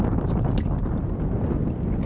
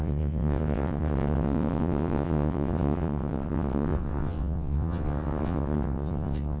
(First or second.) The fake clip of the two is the second